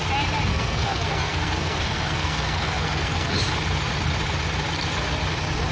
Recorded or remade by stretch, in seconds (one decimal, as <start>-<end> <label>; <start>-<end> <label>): 0.0-0.5 recorded; 0.5-3.3 remade; 3.3-5.7 recorded